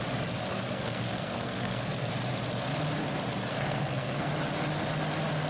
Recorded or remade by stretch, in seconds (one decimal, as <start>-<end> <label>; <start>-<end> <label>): 0.0-0.5 recorded; 0.5-2.1 remade; 2.1-3.5 recorded; 3.5-4.3 remade; 4.3-5.5 recorded